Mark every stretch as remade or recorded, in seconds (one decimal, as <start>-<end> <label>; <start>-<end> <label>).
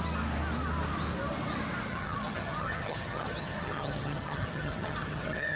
0.0-1.9 recorded; 1.9-5.6 remade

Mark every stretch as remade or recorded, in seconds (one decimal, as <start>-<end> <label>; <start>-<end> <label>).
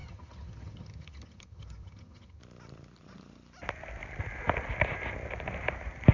0.0-2.4 remade; 2.4-6.1 recorded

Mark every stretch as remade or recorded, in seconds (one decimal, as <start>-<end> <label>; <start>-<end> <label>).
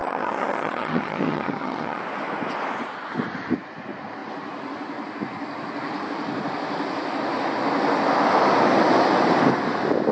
0.0-2.0 remade; 2.0-10.1 recorded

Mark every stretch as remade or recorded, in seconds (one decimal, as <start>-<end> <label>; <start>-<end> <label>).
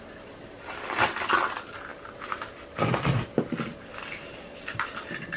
0.0-5.4 recorded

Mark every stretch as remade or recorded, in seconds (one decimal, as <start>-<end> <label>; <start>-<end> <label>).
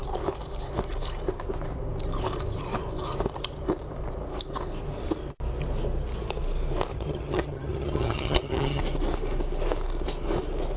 0.0-6.9 recorded; 6.9-8.8 remade; 8.8-10.8 recorded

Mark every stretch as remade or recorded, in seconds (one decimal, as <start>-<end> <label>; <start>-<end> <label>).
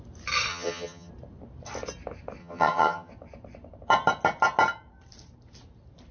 0.0-0.5 recorded; 0.5-1.1 remade; 1.1-2.4 recorded; 2.4-3.1 remade; 3.1-6.1 recorded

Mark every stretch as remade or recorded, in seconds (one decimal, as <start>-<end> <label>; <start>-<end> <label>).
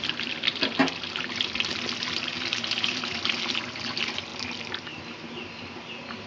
0.0-6.3 recorded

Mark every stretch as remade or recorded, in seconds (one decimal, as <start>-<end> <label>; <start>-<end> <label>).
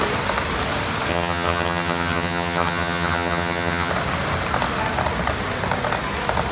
0.0-1.1 recorded; 1.1-3.9 remade; 3.9-6.5 recorded